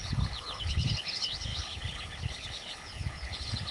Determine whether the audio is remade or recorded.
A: remade